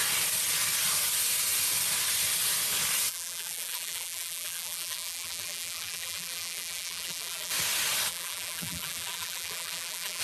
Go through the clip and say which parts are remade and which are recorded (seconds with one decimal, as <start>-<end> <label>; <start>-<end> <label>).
0.0-3.1 recorded; 3.1-7.5 remade; 7.5-8.1 recorded; 8.1-10.2 remade